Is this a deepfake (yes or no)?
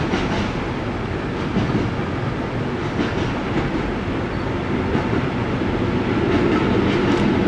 no